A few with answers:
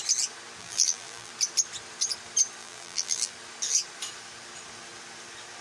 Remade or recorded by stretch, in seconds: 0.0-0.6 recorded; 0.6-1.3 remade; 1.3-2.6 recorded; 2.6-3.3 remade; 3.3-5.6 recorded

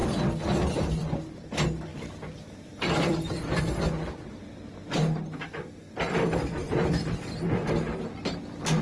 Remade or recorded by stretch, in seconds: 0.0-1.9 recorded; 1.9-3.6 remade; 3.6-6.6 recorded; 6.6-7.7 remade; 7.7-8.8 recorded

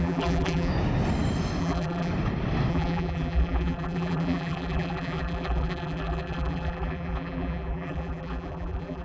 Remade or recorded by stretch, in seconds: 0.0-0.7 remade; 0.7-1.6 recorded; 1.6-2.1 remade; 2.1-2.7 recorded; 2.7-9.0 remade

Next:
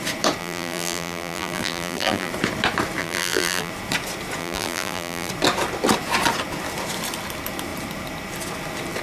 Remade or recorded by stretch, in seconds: 0.0-0.4 recorded; 0.4-2.3 remade; 2.3-3.0 recorded; 3.0-3.7 remade; 3.7-4.4 recorded; 4.4-5.3 remade; 5.3-9.0 recorded

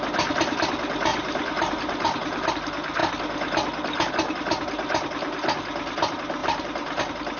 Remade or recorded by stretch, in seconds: 0.0-1.1 recorded; 1.1-2.5 remade; 2.5-6.4 recorded; 6.4-7.0 remade; 7.0-7.4 recorded